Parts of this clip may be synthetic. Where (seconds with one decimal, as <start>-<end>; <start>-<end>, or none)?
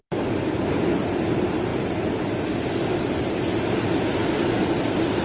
none